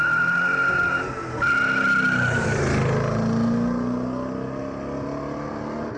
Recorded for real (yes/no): yes